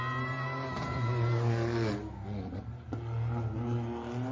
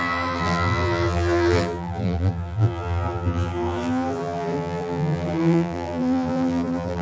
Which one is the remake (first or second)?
second